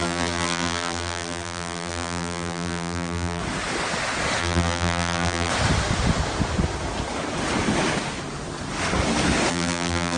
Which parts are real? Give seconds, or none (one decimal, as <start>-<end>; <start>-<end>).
3.4-4.4; 5.5-9.5